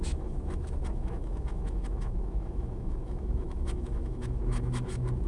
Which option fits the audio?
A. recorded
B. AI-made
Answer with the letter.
B